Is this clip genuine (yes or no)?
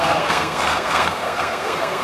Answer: no